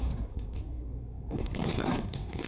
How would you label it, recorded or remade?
remade